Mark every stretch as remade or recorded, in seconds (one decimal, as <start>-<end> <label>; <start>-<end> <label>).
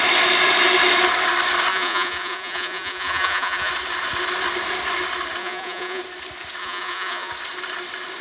0.0-1.7 recorded; 1.7-3.7 remade; 3.7-5.4 recorded; 5.4-6.0 remade; 6.0-6.6 recorded; 6.6-7.3 remade; 7.3-8.2 recorded